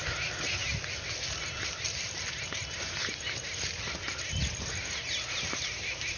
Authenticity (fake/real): real